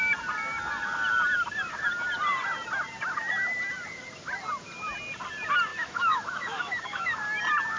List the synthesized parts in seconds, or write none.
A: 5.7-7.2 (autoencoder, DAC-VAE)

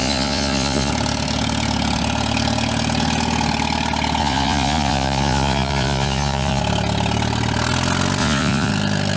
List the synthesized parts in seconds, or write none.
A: 0.0-0.9 (vocoder, Vocos); 4.2-6.6; 8.2-8.7

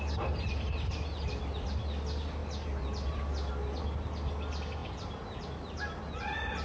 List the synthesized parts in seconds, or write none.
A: none

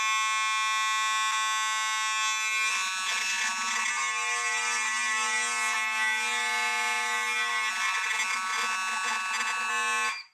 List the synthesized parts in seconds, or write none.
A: 2.7-3.9 (vocoder, Vocos); 7.7-9.7